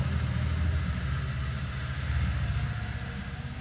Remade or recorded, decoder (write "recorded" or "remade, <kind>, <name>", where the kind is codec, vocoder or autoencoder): recorded